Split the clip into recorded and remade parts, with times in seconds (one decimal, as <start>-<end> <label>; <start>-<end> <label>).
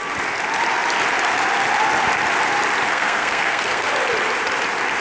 0.0-2.9 recorded; 2.9-3.9 remade; 3.9-5.0 recorded